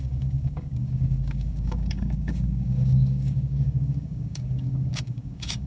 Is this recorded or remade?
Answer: remade